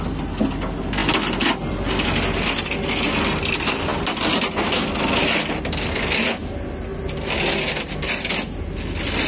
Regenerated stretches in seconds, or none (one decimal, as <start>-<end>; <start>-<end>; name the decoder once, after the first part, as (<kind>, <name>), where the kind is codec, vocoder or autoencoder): none

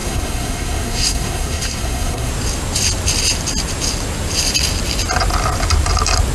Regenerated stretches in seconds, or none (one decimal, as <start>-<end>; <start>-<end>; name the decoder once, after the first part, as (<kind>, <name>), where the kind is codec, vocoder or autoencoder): 0.0-2.3 (codec, SNAC)

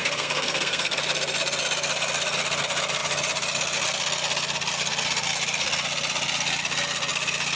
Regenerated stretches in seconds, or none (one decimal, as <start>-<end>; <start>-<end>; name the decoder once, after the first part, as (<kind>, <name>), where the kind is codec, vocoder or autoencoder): 0.0-1.0 (codec, SNAC)

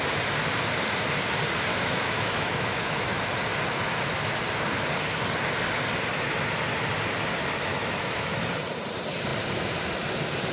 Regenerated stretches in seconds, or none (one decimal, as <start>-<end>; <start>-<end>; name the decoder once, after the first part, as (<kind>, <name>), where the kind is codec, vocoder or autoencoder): 1.7-3.0 (autoencoder, DAC-VAE); 7.7-8.4

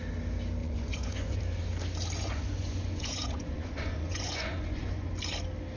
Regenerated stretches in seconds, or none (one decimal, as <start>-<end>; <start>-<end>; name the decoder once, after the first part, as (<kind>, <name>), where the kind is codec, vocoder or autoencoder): 0.6-1.4 (vocoder, Vocos); 2.2-5.1

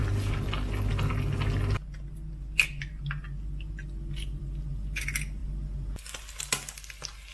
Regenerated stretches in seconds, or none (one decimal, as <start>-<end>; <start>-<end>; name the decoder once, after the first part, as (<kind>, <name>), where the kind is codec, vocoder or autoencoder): none

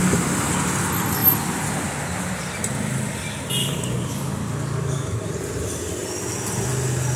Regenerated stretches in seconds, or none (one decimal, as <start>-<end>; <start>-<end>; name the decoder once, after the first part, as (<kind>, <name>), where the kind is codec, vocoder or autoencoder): 3.6-5.3 (codec, DAC)

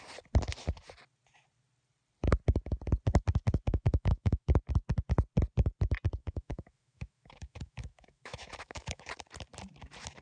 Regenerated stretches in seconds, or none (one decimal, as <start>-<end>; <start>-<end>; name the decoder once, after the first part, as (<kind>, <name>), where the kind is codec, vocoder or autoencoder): 3.7-4.6 (autoencoder, DAC-VAE); 6.2-9.1